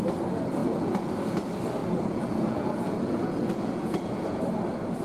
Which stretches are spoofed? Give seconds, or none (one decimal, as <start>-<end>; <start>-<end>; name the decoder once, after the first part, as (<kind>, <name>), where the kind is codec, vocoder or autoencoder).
0.6-1.1 (vocoder, Vocos); 1.8-4.4